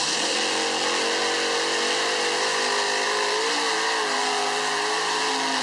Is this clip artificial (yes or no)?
no